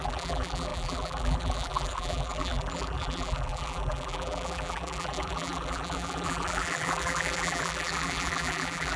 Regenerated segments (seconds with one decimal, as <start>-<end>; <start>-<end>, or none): 0.0-9.0